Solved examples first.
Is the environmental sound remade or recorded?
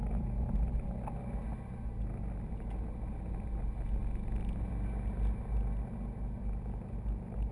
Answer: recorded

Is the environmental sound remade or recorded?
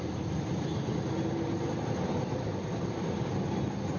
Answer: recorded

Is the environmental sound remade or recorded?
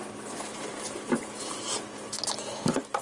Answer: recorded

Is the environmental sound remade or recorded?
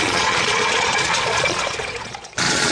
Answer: remade